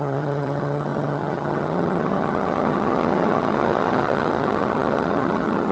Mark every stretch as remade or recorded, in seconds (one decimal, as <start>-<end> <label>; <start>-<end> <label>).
0.0-5.7 remade